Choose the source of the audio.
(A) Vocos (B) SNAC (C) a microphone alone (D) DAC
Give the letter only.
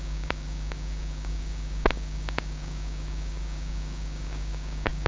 D